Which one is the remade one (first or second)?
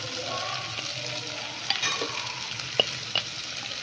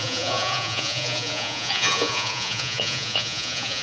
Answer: second